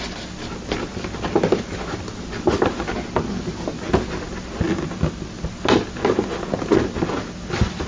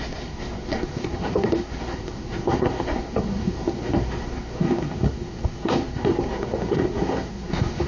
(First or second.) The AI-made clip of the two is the second